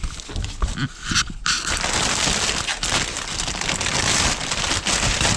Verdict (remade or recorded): recorded